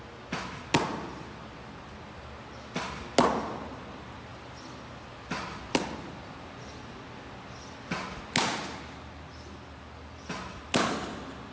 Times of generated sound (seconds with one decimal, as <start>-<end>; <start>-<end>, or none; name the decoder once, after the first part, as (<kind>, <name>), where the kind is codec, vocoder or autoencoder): none